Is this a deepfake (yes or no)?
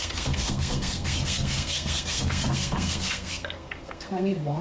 yes